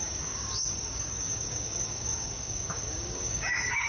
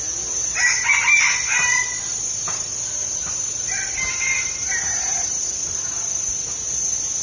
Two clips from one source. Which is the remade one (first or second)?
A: first